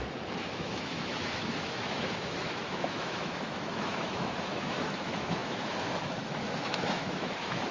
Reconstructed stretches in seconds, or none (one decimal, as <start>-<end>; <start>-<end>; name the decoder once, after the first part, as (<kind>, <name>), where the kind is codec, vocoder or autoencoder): 0.0-7.7 (autoencoder, DAC-VAE)